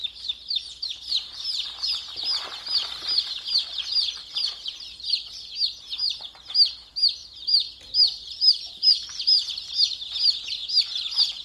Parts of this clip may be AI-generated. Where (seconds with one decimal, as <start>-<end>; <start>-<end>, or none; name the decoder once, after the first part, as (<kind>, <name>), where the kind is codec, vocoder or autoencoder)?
0.0-0.6 (vocoder, BigVGAN v2); 7.2-9.6